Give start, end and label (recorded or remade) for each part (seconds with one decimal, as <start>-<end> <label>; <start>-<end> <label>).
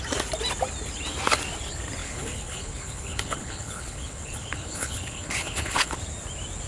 0.0-2.0 recorded; 2.0-6.0 remade; 6.0-6.7 recorded